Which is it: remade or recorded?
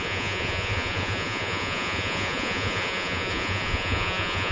remade